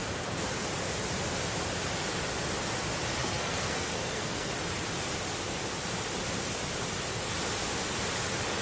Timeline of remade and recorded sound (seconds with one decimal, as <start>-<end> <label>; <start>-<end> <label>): 0.0-3.2 recorded; 3.2-4.5 remade; 4.5-8.6 recorded